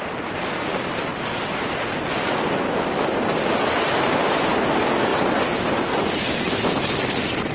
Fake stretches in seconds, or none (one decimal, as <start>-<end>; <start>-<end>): none